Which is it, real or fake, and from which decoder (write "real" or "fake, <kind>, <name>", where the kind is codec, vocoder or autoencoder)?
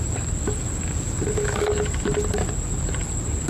real